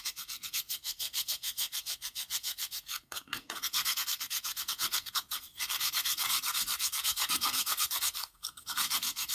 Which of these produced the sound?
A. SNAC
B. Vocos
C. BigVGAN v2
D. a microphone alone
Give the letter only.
A